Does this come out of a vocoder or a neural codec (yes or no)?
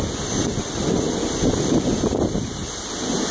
no